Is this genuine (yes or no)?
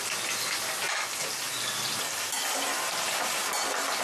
yes